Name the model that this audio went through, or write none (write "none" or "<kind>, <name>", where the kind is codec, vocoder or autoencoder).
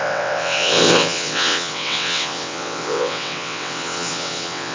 vocoder, WaveNeXt